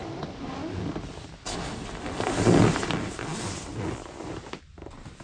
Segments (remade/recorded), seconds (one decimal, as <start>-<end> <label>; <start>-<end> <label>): 0.0-5.2 recorded